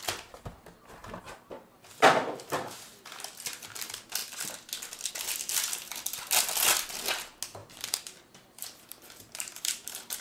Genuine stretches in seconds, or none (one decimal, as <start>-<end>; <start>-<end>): 0.0-1.0; 1.7-7.6